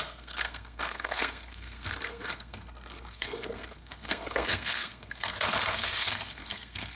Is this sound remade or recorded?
remade